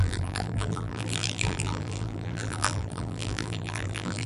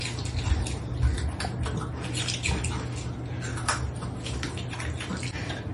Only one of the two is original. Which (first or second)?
second